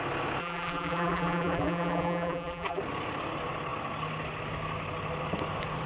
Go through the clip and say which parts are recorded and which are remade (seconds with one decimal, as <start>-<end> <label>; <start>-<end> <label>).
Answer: 0.0-0.4 recorded; 0.4-2.8 remade; 2.8-5.9 recorded